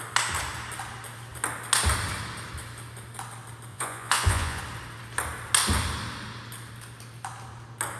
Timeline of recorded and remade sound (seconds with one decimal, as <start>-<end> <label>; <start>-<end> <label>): 0.0-3.7 recorded; 3.7-4.6 remade; 4.6-8.0 recorded